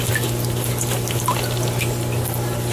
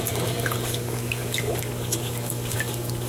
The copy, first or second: second